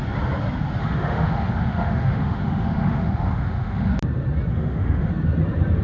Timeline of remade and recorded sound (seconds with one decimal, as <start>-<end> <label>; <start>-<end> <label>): 0.0-0.8 recorded; 0.8-3.9 remade; 3.9-4.5 recorded; 4.5-5.1 remade; 5.1-5.8 recorded